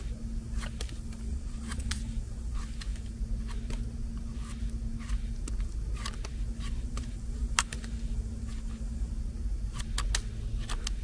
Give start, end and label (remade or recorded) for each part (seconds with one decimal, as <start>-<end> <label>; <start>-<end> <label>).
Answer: 0.0-1.3 recorded; 1.3-2.0 remade; 2.0-11.0 recorded